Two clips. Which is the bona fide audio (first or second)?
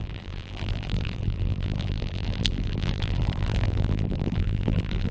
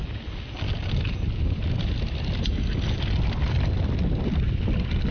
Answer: second